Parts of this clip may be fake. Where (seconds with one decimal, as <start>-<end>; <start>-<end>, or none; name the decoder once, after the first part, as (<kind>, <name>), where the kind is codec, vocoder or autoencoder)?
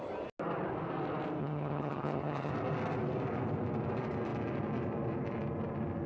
1.4-2.5 (vocoder, HiFi-GAN)